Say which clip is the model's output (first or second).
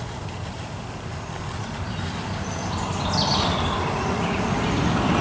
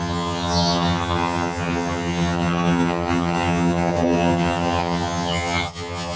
second